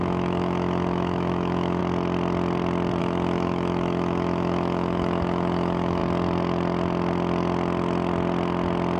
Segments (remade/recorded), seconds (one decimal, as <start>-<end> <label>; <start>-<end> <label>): 0.0-1.8 remade; 1.8-3.0 recorded; 3.0-6.0 remade; 6.0-9.0 recorded